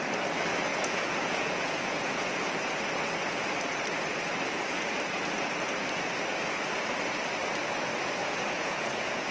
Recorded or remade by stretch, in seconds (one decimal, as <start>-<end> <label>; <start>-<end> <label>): 0.0-0.7 recorded; 0.7-2.5 remade; 2.5-8.2 recorded; 8.2-9.3 remade